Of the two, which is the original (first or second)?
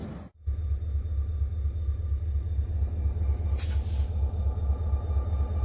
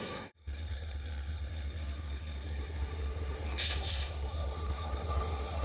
first